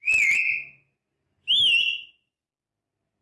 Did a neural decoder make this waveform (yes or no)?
no